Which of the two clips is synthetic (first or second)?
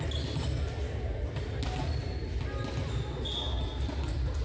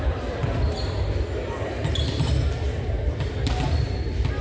second